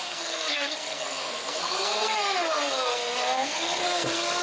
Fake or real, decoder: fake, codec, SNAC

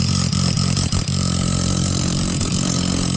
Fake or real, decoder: real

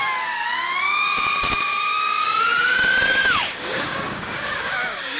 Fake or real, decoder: fake, codec, DAC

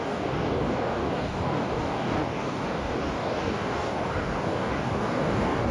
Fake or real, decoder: fake, codec, DAC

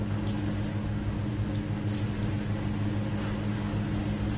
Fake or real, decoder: real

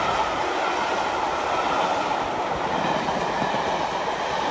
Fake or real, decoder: real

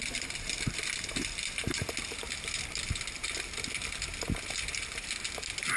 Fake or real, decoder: fake, vocoder, BigVGAN v2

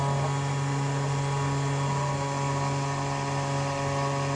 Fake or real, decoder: real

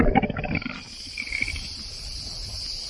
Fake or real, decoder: real